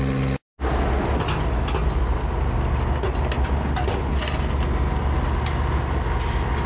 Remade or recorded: recorded